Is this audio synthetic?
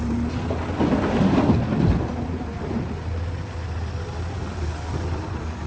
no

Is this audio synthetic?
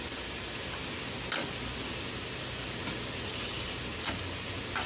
no